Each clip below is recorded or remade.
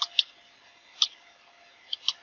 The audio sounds recorded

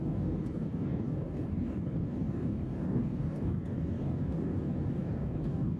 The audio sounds remade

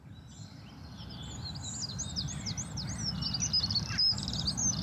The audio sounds recorded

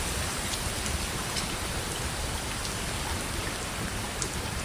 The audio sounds recorded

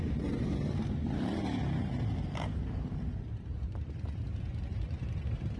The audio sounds remade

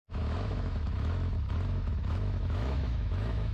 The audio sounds remade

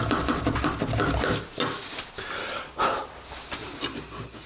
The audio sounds recorded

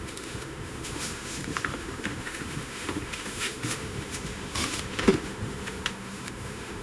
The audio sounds remade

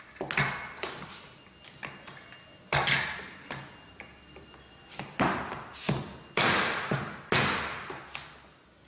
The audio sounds recorded